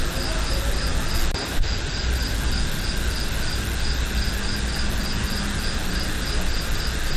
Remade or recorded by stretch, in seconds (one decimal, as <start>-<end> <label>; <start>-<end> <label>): 0.0-7.2 recorded